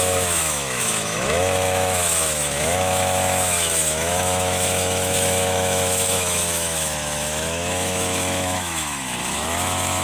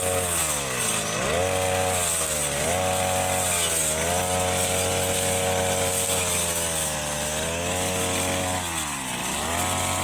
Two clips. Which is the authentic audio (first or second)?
second